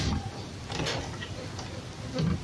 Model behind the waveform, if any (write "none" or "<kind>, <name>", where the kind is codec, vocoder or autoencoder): none